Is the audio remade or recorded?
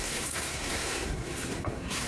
remade